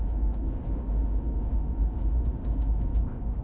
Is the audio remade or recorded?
remade